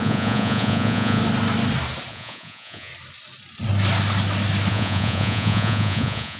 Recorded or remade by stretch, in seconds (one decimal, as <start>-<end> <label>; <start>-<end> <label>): 0.0-1.2 remade; 1.2-2.1 recorded; 2.1-2.9 remade; 2.9-4.7 recorded; 4.7-6.4 remade